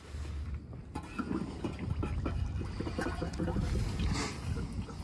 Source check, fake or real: real